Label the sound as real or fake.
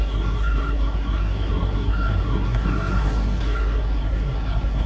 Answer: fake